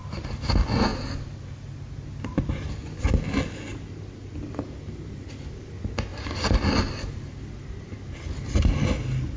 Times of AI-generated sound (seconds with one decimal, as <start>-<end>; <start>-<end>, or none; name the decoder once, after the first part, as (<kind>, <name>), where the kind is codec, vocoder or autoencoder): none